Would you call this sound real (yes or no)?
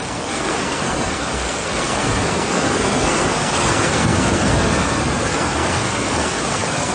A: no